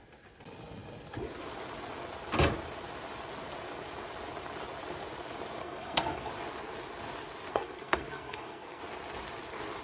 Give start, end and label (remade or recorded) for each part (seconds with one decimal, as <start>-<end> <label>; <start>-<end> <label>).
0.0-5.6 recorded; 5.6-6.3 remade; 6.3-7.5 recorded; 7.5-8.8 remade; 8.8-9.8 recorded

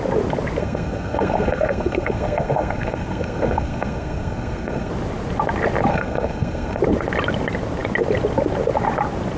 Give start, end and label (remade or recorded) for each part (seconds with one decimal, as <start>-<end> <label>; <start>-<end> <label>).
0.0-0.6 recorded; 0.6-4.9 remade; 4.9-5.9 recorded; 5.9-6.8 remade; 6.8-9.4 recorded